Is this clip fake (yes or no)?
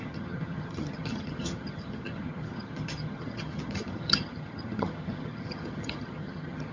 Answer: yes